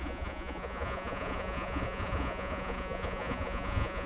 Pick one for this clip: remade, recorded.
remade